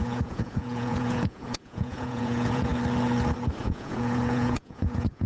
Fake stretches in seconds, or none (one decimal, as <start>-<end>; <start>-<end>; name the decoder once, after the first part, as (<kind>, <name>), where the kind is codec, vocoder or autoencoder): 0.0-2.7 (vocoder, Vocos); 3.6-5.3